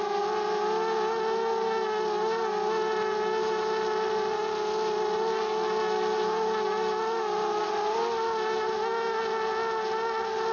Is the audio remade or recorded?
recorded